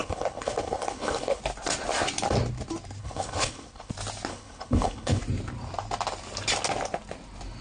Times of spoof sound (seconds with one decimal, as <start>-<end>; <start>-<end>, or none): 0.0-1.4; 3.0-3.9; 4.3-5.2